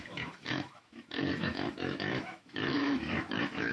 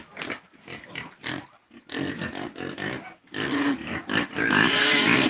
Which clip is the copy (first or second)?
first